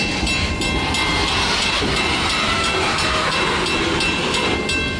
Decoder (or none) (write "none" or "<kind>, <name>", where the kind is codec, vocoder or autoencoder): none